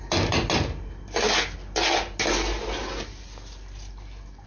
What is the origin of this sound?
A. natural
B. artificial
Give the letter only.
A